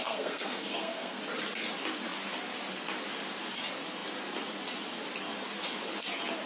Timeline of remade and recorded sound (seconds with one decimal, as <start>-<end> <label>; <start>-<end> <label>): 0.0-1.2 remade; 1.2-6.5 recorded